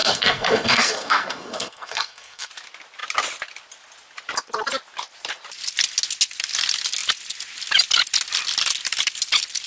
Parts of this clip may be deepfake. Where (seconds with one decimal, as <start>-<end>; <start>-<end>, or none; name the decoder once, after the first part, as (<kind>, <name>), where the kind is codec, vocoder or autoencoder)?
0.0-2.5 (codec, SNAC)